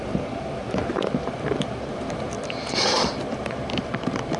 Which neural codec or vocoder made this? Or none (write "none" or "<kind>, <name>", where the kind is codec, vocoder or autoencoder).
vocoder, BigVGAN v2